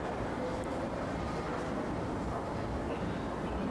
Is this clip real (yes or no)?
yes